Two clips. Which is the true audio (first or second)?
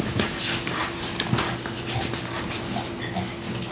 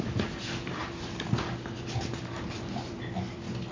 first